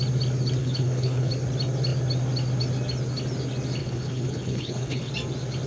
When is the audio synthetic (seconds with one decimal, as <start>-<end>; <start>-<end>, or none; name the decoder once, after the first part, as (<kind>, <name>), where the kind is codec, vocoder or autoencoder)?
0.6-1.3 (codec, HILCodec); 3.8-5.1